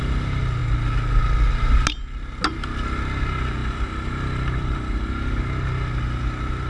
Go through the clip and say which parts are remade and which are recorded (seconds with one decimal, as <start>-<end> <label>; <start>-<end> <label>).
0.0-3.6 recorded; 3.6-5.1 remade; 5.1-6.7 recorded